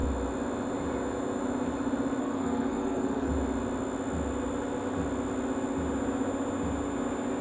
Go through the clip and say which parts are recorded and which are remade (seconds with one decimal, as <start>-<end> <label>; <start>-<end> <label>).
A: 0.0-2.2 recorded; 2.2-3.3 remade; 3.3-7.4 recorded